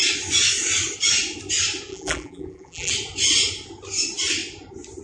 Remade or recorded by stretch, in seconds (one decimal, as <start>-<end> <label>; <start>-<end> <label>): 0.0-1.9 recorded; 1.9-2.9 remade; 2.9-5.0 recorded